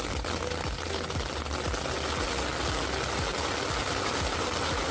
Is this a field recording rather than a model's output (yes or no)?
yes